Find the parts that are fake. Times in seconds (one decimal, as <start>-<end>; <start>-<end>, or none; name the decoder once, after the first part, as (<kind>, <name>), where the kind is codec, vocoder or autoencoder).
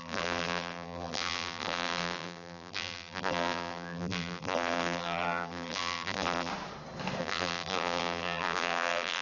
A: 0.0-6.5 (vocoder, BigVGAN v2); 7.2-9.2